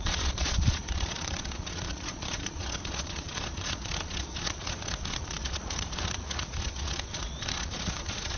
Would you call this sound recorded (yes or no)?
no